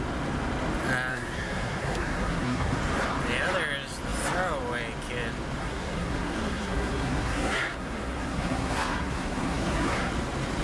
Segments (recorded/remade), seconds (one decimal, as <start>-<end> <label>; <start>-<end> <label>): 0.0-1.1 recorded; 1.1-2.8 remade; 2.8-5.6 recorded; 5.6-10.1 remade; 10.1-10.6 recorded